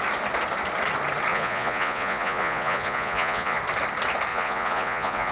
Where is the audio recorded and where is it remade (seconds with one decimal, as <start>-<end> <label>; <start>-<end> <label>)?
0.0-1.3 recorded; 1.3-3.6 remade; 3.6-4.3 recorded; 4.3-5.3 remade